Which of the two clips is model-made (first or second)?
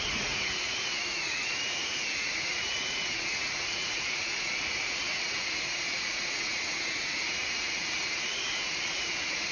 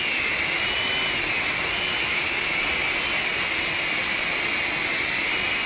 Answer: first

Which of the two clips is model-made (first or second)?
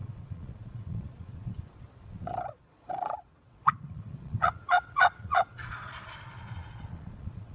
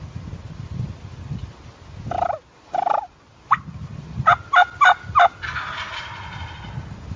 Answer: first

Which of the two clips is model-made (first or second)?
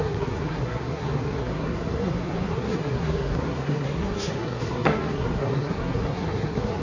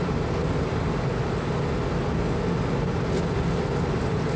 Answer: first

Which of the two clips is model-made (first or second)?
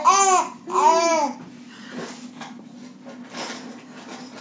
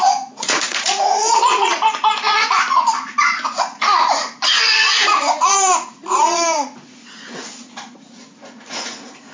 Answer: second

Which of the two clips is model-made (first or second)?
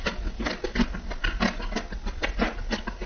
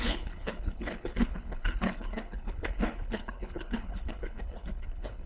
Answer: second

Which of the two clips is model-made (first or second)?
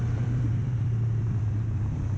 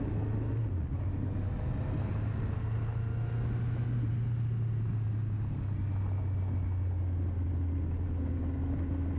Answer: first